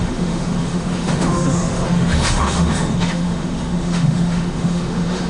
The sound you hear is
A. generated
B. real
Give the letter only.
A